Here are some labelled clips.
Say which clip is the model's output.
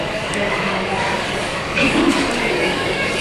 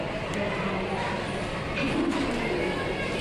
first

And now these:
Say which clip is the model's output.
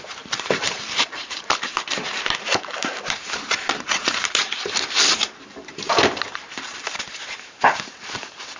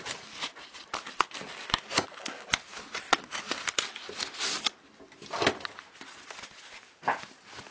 first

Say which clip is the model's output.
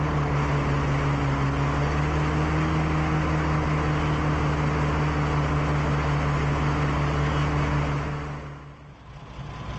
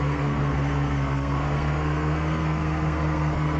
second